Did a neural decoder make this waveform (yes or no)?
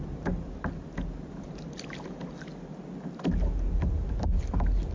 no